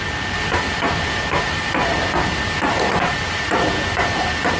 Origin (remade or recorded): recorded